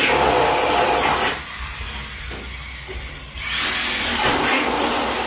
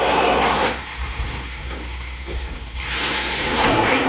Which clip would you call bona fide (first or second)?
first